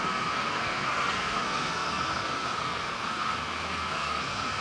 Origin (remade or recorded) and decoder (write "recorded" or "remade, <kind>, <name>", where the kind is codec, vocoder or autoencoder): remade, codec, SNAC